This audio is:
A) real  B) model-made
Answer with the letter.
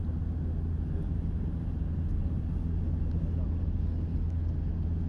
A